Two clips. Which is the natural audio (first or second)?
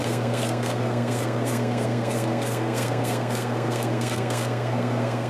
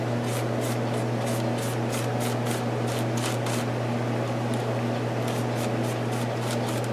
second